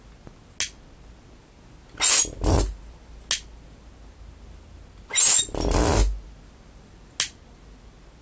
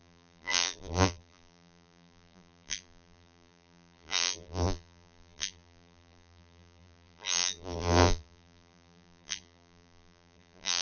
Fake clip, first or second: second